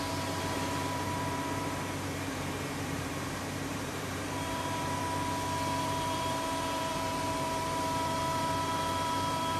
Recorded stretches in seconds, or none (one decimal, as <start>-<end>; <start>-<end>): 5.0-5.8